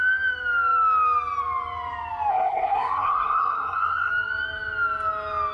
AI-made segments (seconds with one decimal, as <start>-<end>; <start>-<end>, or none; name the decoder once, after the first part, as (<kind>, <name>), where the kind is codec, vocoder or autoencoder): 2.3-4.1 (codec, SNAC)